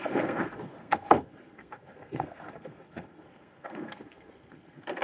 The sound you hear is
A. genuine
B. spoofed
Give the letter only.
B